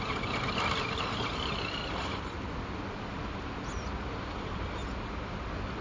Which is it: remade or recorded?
recorded